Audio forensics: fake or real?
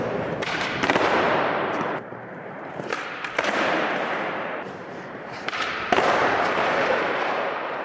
fake